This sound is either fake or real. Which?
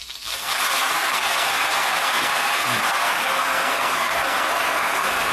fake